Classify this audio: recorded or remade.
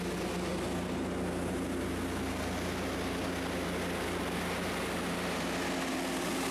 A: recorded